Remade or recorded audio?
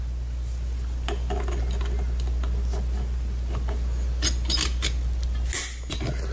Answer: recorded